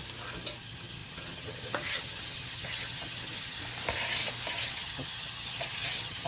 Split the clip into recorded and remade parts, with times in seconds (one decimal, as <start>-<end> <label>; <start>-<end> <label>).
0.0-0.6 recorded; 0.6-3.6 remade; 3.6-4.5 recorded; 4.5-6.3 remade